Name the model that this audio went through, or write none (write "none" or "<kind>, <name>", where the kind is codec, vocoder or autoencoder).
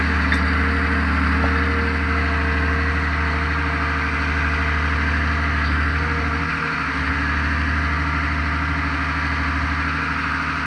none